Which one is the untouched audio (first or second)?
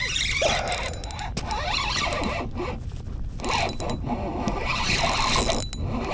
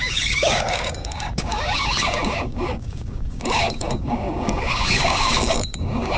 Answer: first